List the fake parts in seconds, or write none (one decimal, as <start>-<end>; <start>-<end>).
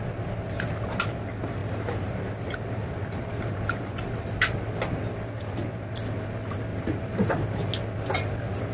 1.6-2.2; 6.7-7.4